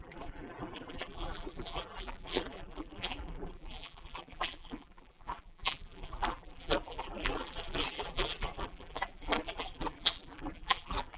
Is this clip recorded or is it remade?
remade